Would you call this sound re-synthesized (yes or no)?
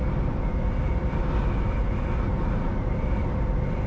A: no